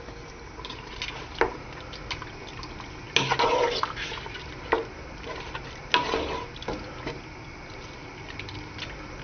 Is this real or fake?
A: real